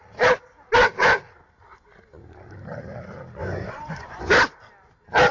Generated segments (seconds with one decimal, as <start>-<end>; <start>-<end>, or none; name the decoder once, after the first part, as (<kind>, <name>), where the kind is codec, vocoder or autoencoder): 3.4-4.3 (vocoder, Vocos)